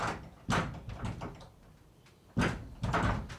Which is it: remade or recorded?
recorded